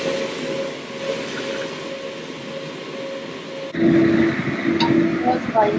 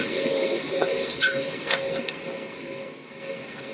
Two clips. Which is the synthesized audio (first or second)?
second